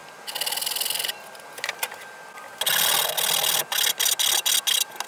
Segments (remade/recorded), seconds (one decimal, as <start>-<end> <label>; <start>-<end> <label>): 0.0-5.1 recorded